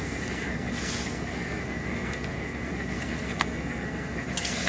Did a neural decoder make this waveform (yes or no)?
yes